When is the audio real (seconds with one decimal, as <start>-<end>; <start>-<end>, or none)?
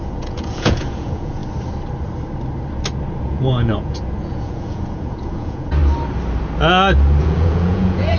1.4-3.2; 5.8-7.2